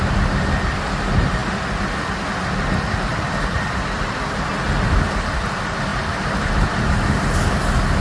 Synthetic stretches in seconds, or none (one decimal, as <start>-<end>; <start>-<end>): 1.4-2.1; 3.1-4.5; 5.9-6.5